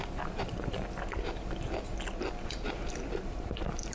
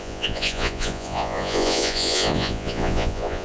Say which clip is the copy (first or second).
second